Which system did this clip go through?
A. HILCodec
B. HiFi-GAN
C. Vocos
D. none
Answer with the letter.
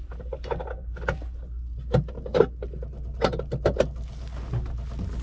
D